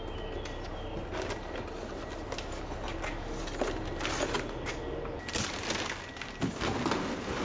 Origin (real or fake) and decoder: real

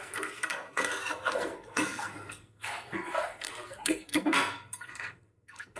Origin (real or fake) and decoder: fake, codec, SNAC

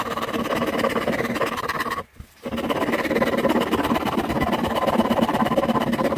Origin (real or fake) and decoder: fake, vocoder, BigVGAN v2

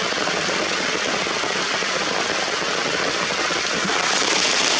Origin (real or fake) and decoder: real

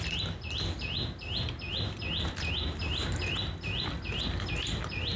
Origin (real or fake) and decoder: real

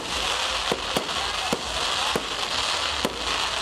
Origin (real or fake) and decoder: real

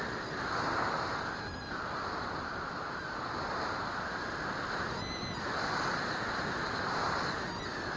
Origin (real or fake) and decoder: real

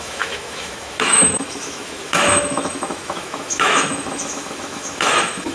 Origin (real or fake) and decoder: fake, autoencoder, DAC-VAE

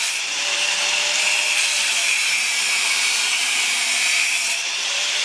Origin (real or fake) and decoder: fake, vocoder, BigVGAN v2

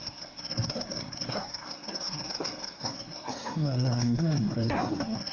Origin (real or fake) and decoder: fake, codec, SNAC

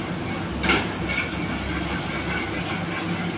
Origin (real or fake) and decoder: real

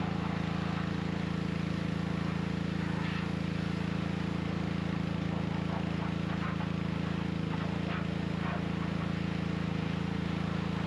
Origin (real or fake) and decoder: real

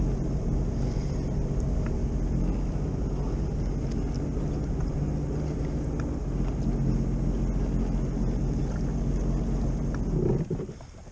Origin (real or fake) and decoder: real